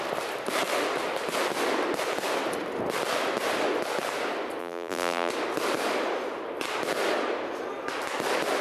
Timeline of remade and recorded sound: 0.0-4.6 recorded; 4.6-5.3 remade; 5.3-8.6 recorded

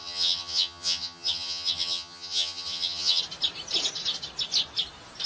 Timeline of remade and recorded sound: 0.0-3.2 remade; 3.2-5.3 recorded

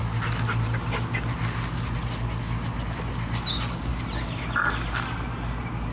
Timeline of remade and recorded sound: 0.0-3.5 recorded; 3.5-3.9 remade; 3.9-5.9 recorded

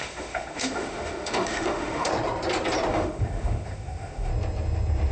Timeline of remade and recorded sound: 0.0-2.1 remade; 2.1-2.9 recorded; 2.9-4.3 remade; 4.3-5.1 recorded

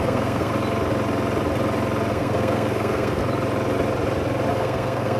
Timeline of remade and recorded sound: 0.0-0.5 remade; 0.5-2.1 recorded; 2.1-3.2 remade; 3.2-4.5 recorded; 4.5-5.2 remade